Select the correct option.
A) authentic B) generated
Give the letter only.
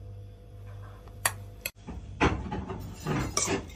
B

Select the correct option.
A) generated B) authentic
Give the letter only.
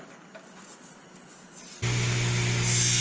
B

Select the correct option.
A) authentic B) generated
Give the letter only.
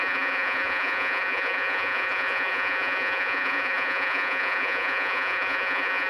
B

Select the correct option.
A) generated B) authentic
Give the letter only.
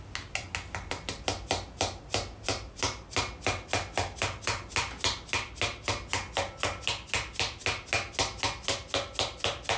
B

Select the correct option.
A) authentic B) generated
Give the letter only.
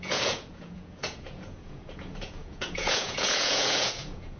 B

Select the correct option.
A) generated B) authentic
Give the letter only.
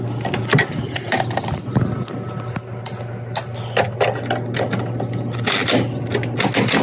B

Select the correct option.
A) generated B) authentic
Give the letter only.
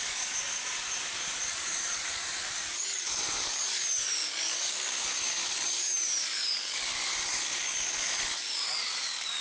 A